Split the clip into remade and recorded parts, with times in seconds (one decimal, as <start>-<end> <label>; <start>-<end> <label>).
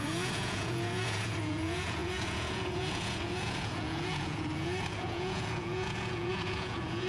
0.0-7.1 remade